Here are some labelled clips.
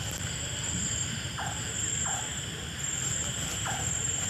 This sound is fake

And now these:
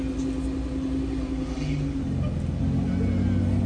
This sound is real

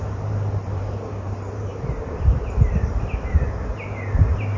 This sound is fake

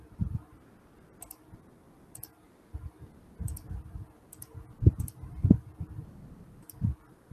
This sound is real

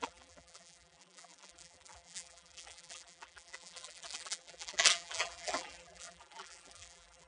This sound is fake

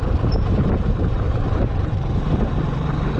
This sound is fake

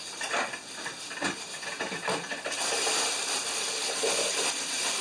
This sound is fake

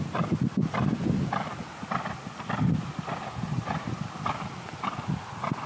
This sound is real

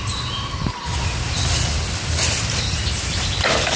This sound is real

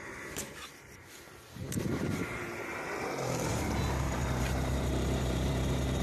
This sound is fake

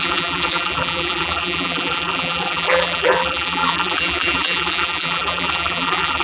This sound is fake